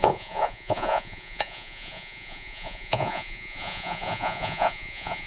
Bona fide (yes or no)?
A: no